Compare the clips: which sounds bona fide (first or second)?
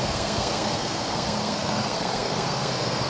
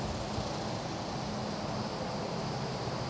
second